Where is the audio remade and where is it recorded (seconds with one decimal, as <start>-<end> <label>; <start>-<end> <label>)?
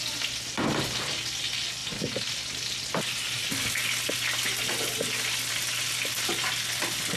0.0-7.2 recorded